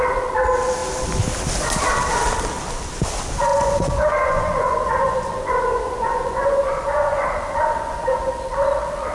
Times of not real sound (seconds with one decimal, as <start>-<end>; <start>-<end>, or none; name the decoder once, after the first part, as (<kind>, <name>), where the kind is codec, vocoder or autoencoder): 3.5-8.3 (vocoder, Vocos)